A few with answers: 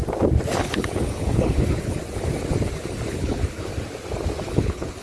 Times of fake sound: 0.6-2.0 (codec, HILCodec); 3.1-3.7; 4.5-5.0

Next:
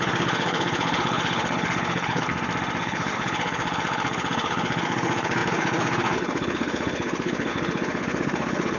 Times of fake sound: 0.0-2.3 (codec, HILCodec); 2.8-8.8

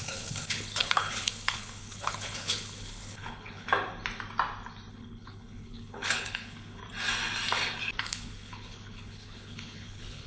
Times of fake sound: 0.0-3.7 (codec, HILCodec); 4.9-6.8; 8.0-10.3